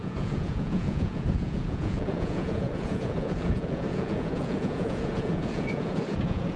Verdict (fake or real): fake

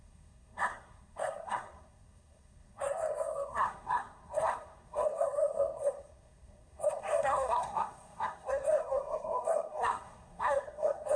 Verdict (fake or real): fake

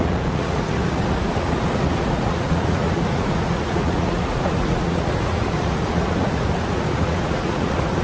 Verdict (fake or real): fake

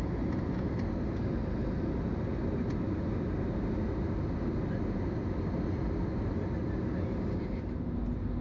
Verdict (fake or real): real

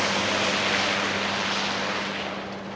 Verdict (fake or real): real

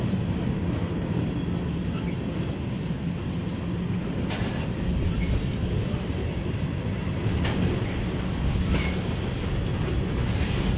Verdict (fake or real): real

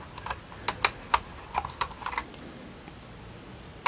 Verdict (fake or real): real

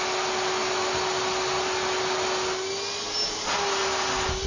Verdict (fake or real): real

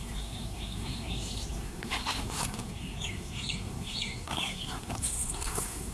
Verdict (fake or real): fake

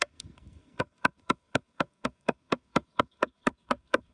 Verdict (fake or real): fake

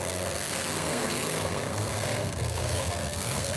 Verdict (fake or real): fake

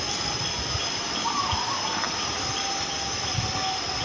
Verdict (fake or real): real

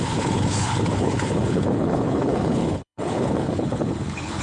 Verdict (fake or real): fake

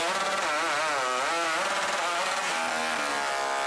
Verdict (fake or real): real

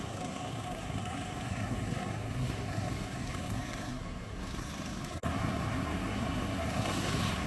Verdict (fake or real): fake